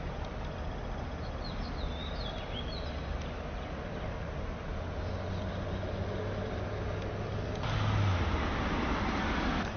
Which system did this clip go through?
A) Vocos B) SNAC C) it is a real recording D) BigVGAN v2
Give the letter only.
C